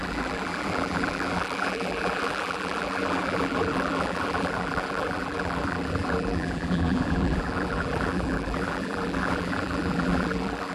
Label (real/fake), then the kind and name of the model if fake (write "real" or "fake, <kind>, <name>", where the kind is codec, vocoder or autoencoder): fake, vocoder, BigVGAN v2